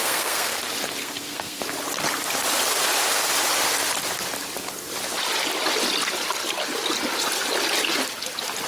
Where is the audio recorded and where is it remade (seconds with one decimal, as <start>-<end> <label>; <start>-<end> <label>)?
0.0-0.6 remade; 0.6-1.0 recorded; 1.0-1.6 remade; 1.6-8.7 recorded